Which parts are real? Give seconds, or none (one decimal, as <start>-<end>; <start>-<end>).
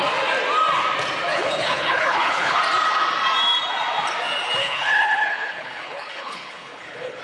0.0-1.3; 2.6-4.6